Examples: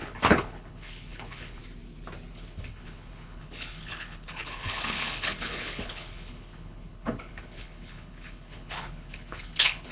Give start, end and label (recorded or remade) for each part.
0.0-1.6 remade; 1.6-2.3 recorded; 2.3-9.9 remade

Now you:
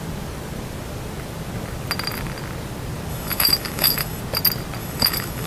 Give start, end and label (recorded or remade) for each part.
0.0-3.1 recorded; 3.1-4.2 remade; 4.2-4.8 recorded; 4.8-5.5 remade

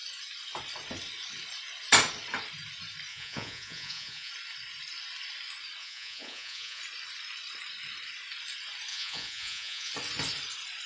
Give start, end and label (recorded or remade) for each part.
0.0-3.1 recorded; 3.1-4.3 remade; 4.3-5.8 recorded; 5.8-6.8 remade; 6.8-8.9 recorded; 8.9-9.9 remade; 9.9-10.9 recorded